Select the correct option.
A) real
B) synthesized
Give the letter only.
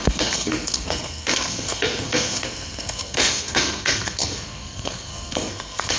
B